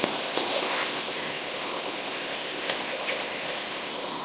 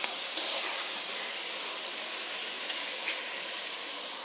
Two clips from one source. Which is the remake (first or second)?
first